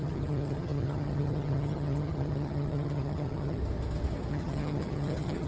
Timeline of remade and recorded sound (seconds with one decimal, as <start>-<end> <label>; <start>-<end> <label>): 0.0-3.6 remade; 3.6-4.3 recorded; 4.3-5.5 remade